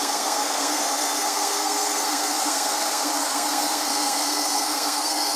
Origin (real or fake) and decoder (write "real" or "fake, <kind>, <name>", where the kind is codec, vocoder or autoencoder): fake, codec, SNAC